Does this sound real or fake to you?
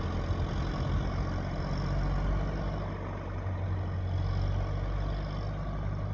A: real